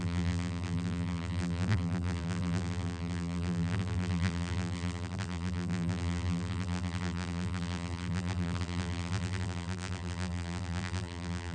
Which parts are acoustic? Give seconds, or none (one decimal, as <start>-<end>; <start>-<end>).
none